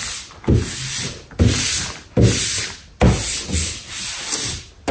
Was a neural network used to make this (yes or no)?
no